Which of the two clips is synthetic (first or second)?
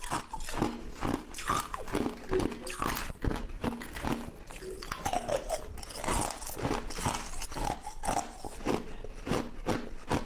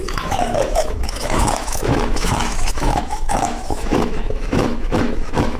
second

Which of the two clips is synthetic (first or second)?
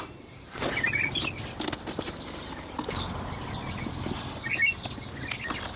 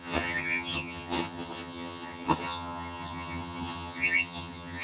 second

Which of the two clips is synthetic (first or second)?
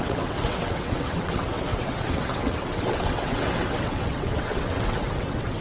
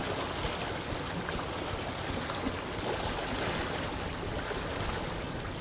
first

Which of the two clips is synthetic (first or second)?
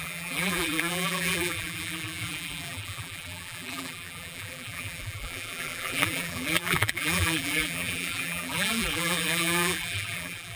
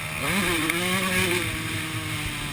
first